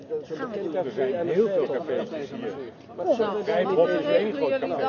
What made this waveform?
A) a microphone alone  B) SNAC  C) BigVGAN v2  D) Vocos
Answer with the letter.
A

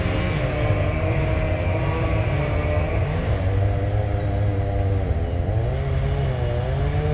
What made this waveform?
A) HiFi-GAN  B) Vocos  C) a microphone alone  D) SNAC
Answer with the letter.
C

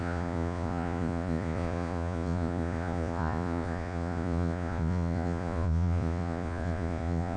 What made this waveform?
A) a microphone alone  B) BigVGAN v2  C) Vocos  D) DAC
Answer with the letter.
C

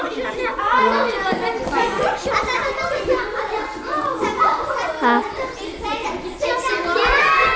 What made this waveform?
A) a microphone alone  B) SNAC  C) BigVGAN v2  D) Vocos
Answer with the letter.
A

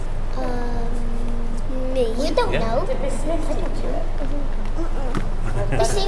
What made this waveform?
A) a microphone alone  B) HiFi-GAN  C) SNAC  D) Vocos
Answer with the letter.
A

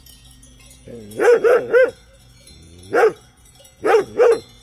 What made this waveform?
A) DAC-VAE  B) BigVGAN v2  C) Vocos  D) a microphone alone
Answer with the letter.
C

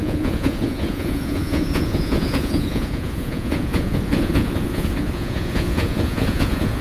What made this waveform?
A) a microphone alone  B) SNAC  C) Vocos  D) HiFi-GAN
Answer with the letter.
C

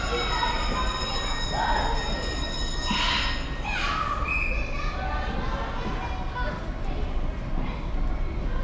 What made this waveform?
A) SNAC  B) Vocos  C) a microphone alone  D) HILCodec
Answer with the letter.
C